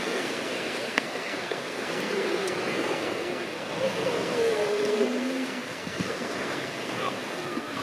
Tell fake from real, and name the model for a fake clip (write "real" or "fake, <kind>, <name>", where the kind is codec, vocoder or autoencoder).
fake, codec, SNAC